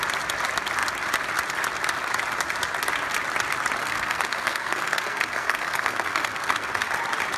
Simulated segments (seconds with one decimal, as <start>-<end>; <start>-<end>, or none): 3.8-6.9